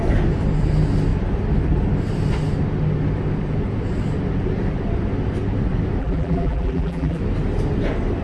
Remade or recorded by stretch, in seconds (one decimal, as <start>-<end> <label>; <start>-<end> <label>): 0.0-6.0 recorded; 6.0-7.2 remade; 7.2-8.2 recorded